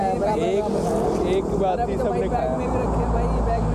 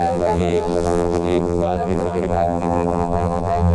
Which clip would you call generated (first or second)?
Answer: second